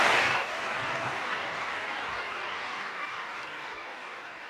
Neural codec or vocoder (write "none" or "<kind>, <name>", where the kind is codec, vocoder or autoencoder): codec, DAC